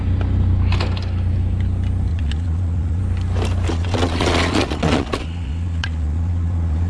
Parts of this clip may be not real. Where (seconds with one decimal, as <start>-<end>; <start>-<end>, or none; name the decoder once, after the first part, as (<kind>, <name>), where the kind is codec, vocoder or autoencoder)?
2.1-3.0 (vocoder, Vocos); 3.7-6.9